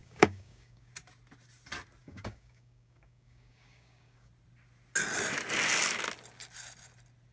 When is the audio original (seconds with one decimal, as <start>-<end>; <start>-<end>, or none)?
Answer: 0.9-2.0; 4.3-7.3